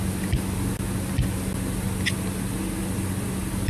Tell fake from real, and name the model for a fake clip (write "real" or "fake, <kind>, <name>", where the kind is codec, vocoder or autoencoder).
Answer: real